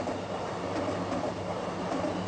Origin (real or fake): real